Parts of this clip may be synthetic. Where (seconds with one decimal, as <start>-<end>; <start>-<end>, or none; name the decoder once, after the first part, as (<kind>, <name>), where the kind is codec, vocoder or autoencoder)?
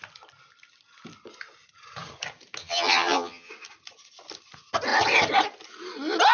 2.6-3.5 (vocoder, HiFi-GAN)